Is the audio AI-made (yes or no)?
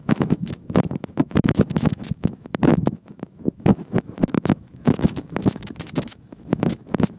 yes